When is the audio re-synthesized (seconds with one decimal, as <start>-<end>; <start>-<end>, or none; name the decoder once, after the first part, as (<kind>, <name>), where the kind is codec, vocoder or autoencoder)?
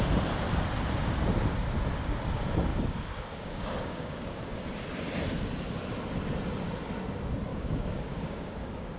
2.7-4.7 (codec, DAC); 7.5-9.0